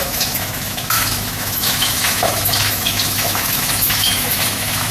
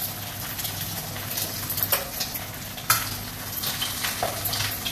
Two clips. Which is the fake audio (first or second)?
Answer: first